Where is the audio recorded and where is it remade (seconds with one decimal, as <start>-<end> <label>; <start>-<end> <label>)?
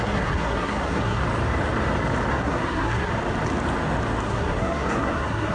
0.0-1.2 remade; 1.2-2.3 recorded; 2.3-3.1 remade; 3.1-4.2 recorded; 4.2-5.5 remade